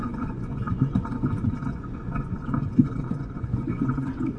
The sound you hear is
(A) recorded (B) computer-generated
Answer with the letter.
B